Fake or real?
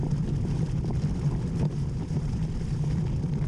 fake